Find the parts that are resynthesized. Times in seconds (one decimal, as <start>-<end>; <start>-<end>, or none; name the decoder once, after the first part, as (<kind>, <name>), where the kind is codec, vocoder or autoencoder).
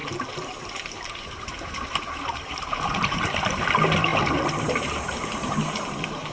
1.1-4.1 (vocoder, BigVGAN v2); 4.6-6.3